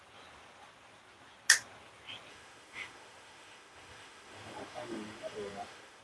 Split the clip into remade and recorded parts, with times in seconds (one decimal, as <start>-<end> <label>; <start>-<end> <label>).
0.0-2.3 recorded; 2.3-6.0 remade